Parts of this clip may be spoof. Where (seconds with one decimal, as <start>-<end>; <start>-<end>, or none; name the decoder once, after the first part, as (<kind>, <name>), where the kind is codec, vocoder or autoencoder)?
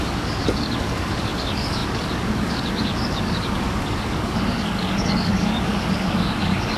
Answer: 0.0-6.8 (codec, DAC)